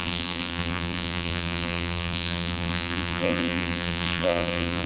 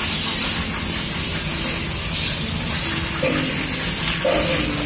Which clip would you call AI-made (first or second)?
first